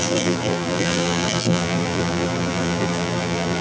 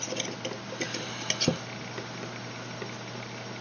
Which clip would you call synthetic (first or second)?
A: first